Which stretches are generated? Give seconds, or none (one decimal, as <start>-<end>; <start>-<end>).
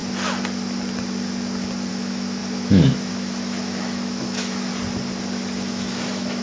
1.9-4.7; 5.7-6.4